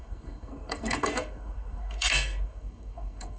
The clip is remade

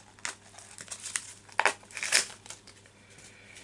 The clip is recorded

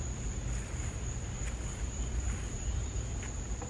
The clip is recorded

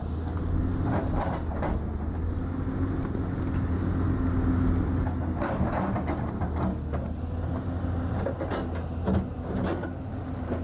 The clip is recorded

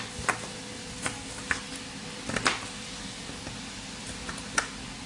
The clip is recorded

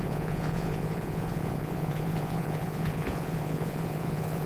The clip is remade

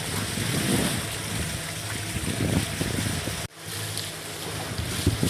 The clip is recorded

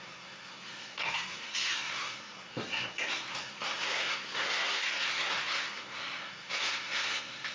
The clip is remade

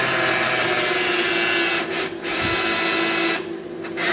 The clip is recorded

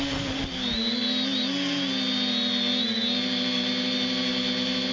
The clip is recorded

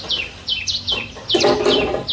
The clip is recorded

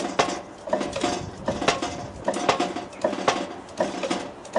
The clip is recorded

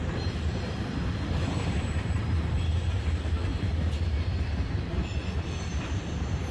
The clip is remade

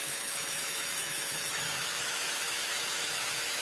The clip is remade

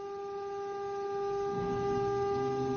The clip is recorded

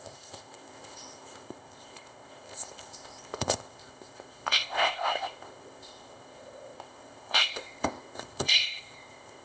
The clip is remade